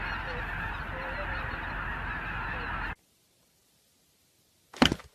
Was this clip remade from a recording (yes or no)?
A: no